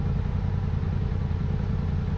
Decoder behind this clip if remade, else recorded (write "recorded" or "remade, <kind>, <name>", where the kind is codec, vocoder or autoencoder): recorded